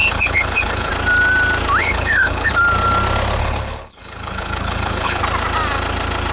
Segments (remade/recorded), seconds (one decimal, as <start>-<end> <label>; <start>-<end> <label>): 0.0-0.9 remade; 0.9-1.8 recorded; 1.8-2.5 remade; 2.5-3.4 recorded; 3.4-5.2 remade; 5.2-6.3 recorded